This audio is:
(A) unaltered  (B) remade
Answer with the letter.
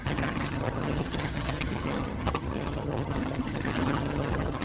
B